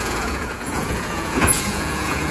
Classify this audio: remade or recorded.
remade